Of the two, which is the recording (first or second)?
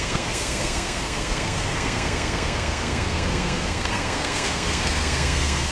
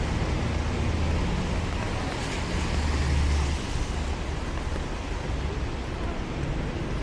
second